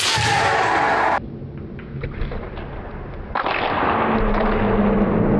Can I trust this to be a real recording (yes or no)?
yes